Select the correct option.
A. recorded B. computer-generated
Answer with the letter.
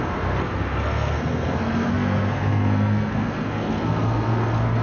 B